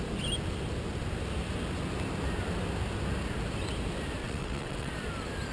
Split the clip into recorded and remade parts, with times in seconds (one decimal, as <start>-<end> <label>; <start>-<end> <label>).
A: 0.0-4.2 recorded; 4.2-4.9 remade; 4.9-5.5 recorded

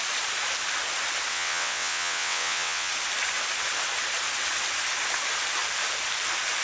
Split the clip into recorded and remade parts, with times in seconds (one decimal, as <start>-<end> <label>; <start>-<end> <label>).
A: 0.0-1.3 recorded; 1.3-2.9 remade; 2.9-6.6 recorded

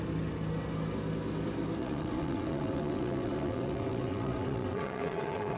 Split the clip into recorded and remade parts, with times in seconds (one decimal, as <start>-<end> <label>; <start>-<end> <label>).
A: 0.0-1.8 recorded; 1.8-5.6 remade